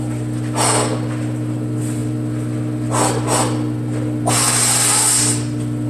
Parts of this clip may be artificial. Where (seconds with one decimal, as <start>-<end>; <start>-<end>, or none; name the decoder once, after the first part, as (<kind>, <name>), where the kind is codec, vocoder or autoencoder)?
none

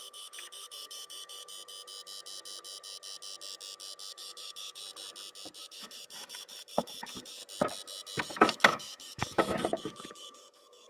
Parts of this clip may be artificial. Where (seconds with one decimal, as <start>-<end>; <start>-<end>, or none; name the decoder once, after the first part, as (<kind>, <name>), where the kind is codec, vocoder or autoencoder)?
0.0-1.5 (autoencoder, DAC-VAE); 4.1-4.8; 5.6-7.4; 8.2-10.9

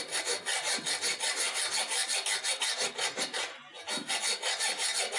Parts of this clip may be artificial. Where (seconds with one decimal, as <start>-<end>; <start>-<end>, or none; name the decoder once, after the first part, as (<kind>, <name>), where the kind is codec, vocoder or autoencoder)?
none

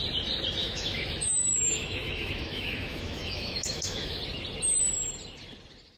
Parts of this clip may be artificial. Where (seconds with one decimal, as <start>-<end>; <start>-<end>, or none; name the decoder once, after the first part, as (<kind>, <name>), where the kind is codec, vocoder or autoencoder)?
0.6-4.2 (autoencoder, DAC-VAE)

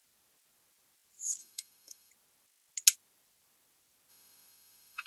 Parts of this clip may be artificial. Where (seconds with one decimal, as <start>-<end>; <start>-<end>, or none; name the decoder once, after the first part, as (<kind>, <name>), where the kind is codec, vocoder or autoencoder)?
1.4-2.1 (autoencoder, DAC-VAE); 4.1-5.1

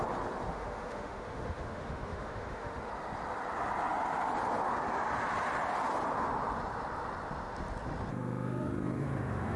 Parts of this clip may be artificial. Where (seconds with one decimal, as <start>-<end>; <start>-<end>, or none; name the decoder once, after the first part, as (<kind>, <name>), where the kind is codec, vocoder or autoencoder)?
0.5-2.9 (autoencoder, DAC-VAE); 8.1-9.6

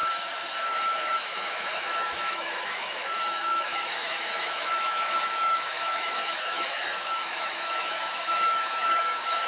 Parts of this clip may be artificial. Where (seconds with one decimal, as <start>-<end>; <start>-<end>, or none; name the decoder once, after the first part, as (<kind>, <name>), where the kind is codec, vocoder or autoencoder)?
0.6-9.5 (autoencoder, DAC-VAE)